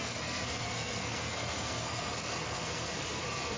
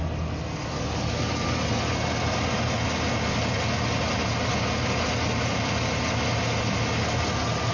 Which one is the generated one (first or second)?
first